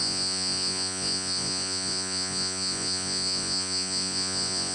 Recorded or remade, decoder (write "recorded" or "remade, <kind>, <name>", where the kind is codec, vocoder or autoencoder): remade, vocoder, Vocos